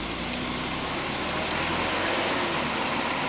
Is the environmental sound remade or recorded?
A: recorded